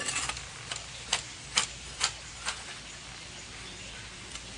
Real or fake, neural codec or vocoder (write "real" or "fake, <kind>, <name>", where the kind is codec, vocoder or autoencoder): real